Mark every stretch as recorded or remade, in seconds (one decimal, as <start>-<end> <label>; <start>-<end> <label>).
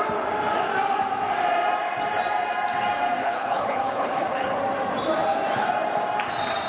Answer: 0.0-3.2 recorded; 3.2-4.6 remade; 4.6-6.7 recorded